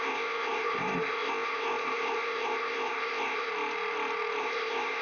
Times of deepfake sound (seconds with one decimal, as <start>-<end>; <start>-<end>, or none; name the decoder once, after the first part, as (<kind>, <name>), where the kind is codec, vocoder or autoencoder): 0.0-3.5 (codec, ZipCodec); 4.4-5.0